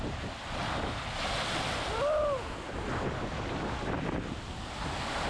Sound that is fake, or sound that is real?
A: real